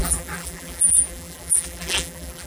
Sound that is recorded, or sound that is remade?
remade